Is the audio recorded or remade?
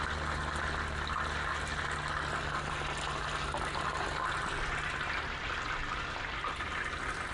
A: recorded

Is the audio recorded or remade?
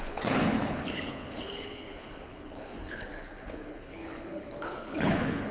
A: remade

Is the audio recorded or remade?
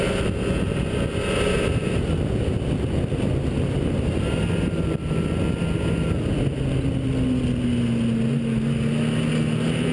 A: recorded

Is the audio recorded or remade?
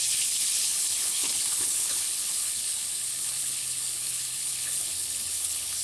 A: remade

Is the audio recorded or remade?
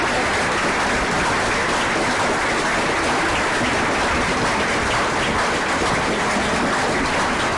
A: recorded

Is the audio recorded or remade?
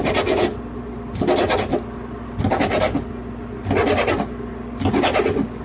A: recorded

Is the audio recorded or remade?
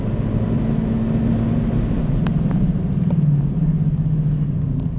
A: recorded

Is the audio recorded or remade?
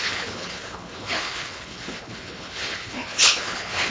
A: remade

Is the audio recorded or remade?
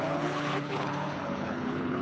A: remade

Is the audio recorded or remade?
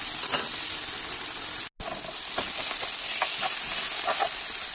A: recorded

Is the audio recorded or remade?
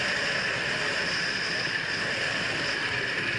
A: recorded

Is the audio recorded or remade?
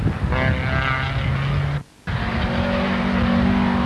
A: recorded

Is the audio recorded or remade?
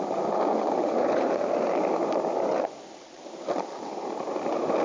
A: recorded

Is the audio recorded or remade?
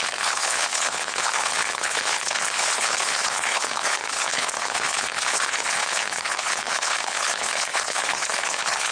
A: remade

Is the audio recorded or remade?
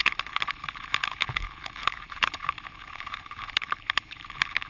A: remade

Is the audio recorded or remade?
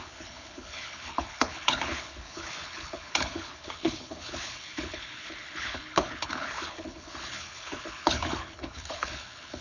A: remade